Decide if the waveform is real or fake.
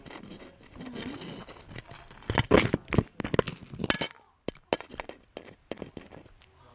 real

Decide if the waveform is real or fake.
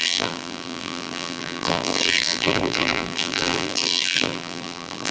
fake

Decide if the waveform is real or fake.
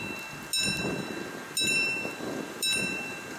real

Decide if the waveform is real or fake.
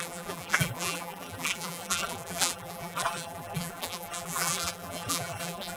fake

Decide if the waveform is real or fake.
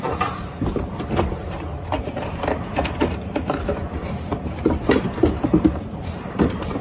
fake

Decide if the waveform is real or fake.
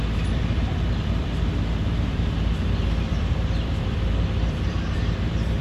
fake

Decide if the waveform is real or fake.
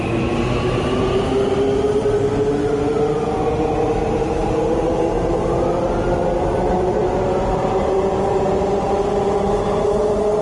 real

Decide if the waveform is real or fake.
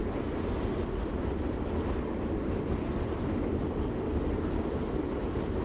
real